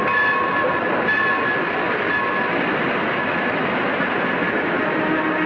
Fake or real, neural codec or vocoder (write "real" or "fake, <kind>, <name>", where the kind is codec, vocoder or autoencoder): real